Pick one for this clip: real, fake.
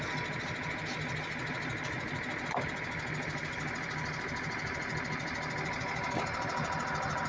real